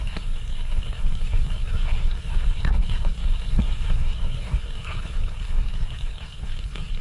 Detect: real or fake fake